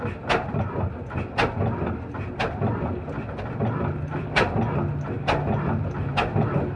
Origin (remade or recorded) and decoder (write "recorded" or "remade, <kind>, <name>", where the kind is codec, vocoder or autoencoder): recorded